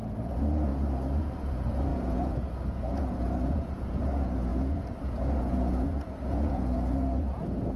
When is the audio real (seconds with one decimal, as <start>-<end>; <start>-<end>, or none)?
0.7-1.2